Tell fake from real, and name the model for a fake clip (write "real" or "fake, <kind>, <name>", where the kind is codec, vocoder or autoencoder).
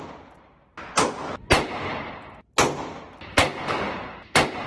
real